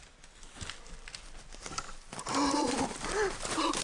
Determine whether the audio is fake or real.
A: real